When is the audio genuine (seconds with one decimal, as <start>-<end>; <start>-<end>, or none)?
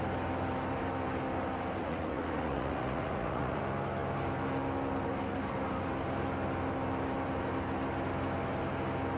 0.0-1.8; 3.6-9.2